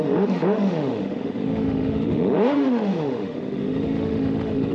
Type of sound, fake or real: fake